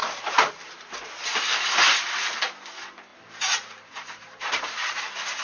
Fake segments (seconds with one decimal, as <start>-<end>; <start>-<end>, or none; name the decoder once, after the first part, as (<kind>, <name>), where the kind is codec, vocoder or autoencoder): 0.0-1.2 (vocoder, BigVGAN v2); 3.1-5.0